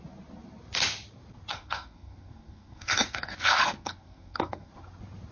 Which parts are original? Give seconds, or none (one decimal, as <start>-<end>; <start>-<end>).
0.0-1.5; 4.7-5.3